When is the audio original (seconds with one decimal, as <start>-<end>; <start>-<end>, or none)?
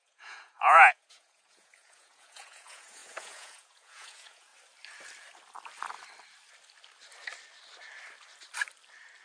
4.5-9.2